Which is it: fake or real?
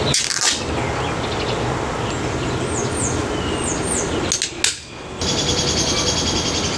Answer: real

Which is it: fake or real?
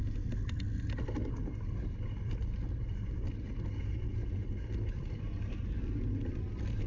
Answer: real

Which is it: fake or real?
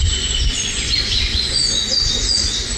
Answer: fake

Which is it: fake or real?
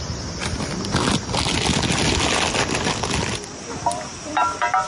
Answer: real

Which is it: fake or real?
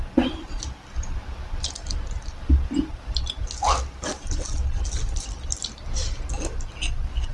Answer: real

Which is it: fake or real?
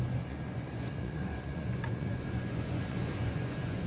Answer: fake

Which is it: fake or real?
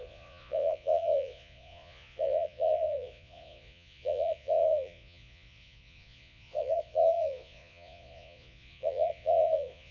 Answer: fake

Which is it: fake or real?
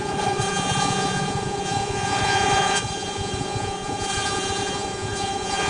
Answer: fake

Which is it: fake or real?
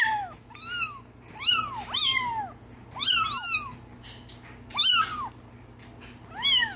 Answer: real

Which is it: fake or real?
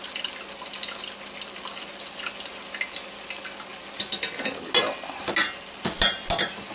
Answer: real